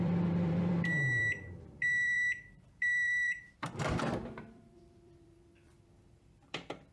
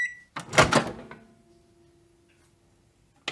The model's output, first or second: first